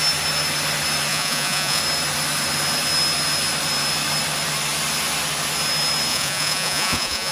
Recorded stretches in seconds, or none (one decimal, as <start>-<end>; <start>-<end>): 0.0-1.1; 1.8-6.1